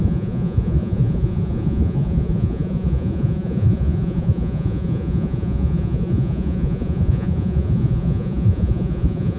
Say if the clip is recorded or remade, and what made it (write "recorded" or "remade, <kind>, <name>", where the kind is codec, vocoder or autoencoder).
remade, vocoder, Vocos